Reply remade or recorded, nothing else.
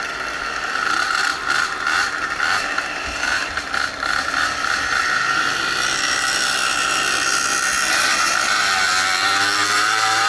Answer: remade